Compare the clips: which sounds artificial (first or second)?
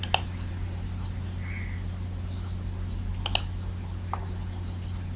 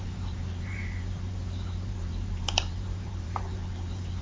second